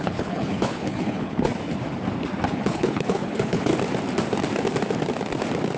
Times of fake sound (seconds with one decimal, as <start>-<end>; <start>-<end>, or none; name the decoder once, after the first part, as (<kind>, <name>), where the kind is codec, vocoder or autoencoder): 0.0-1.5 (codec, HILCodec); 2.5-3.7